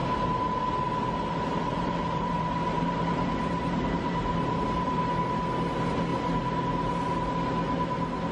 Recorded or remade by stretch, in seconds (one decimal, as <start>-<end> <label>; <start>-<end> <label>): 0.0-1.7 recorded; 1.7-5.1 remade; 5.1-8.3 recorded